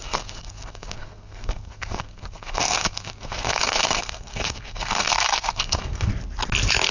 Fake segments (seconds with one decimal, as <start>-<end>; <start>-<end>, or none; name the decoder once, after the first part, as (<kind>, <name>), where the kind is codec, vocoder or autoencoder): 0.0-6.1 (codec, SNAC)